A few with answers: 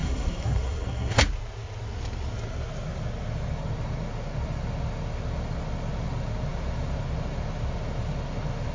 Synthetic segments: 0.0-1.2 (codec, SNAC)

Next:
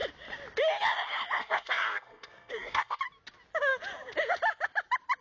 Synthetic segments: 1.4-3.0 (codec, SNAC)

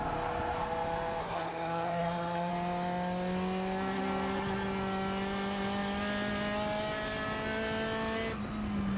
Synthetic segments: 1.2-2.5 (codec, SNAC)

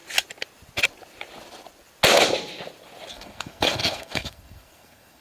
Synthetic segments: 3.1-5.2 (codec, SNAC)

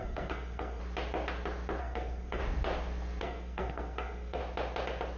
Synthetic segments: 0.0-0.8 (codec, SNAC); 1.8-2.4; 3.2-4.4

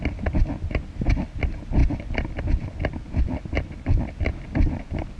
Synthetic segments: none

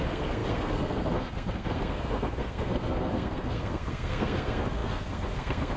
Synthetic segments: 0.0-5.8 (codec, SNAC)

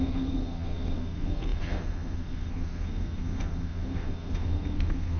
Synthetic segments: 0.0-5.2 (codec, SNAC)